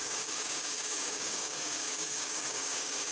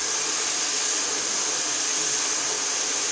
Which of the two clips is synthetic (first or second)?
first